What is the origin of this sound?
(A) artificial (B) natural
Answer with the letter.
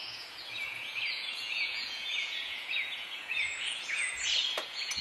A